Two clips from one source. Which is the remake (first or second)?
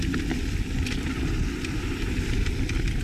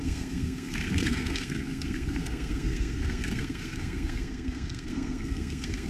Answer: second